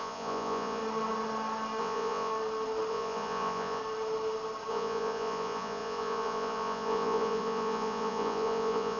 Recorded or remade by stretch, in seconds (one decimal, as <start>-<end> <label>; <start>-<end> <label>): 0.0-0.8 remade; 0.8-1.8 recorded; 1.8-2.3 remade; 2.3-2.9 recorded; 2.9-3.8 remade; 3.8-4.7 recorded; 4.7-9.0 remade

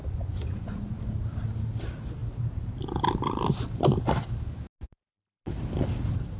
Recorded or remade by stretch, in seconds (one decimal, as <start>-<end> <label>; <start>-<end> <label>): 0.0-1.0 remade; 1.0-6.4 recorded

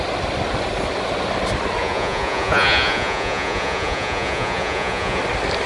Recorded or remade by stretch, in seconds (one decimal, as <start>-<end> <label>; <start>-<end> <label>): 0.0-1.8 recorded; 1.8-5.2 remade; 5.2-5.7 recorded